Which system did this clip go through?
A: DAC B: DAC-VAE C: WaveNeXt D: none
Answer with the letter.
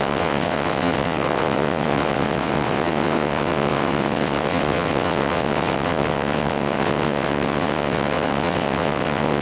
C